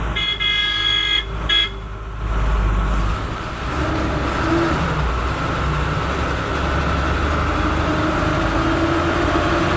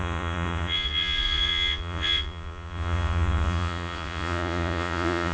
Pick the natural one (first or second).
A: first